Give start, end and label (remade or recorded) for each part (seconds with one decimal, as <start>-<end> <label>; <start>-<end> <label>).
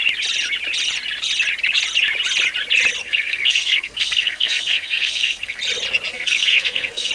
0.0-3.0 recorded; 3.0-5.6 remade; 5.6-6.1 recorded; 6.1-7.1 remade